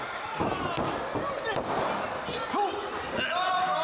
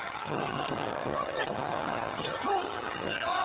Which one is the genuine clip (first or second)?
first